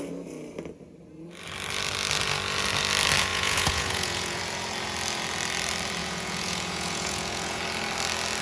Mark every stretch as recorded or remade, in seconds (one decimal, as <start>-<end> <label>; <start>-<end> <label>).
0.0-3.3 recorded; 3.3-4.4 remade; 4.4-6.0 recorded; 6.0-7.6 remade; 7.6-8.4 recorded